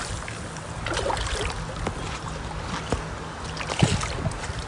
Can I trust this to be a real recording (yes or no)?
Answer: yes